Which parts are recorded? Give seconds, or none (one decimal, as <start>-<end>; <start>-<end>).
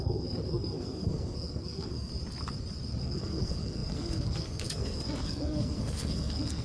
2.1-3.0